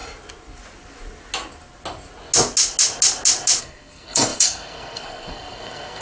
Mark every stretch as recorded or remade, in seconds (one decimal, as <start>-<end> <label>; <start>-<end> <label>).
0.0-3.6 recorded; 3.6-6.0 remade